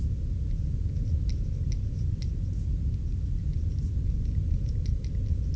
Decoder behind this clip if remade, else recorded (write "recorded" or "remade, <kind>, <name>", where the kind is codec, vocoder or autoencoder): recorded